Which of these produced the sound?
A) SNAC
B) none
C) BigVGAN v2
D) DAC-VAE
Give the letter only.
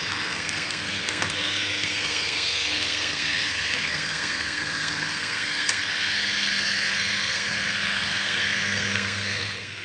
A